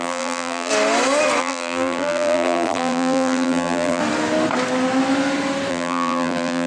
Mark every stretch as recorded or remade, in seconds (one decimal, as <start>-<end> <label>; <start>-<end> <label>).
0.0-0.7 remade; 0.7-1.4 recorded; 1.4-4.0 remade; 4.0-5.7 recorded; 5.7-6.7 remade